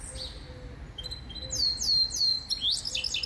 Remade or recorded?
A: recorded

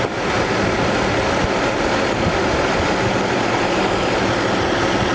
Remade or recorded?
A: recorded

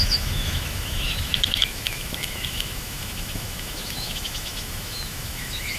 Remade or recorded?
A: remade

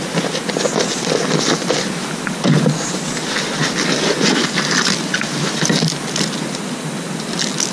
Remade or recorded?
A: recorded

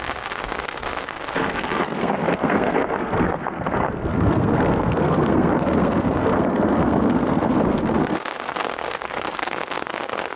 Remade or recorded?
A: remade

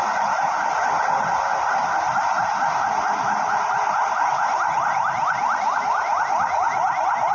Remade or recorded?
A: recorded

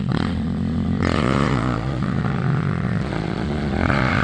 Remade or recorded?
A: remade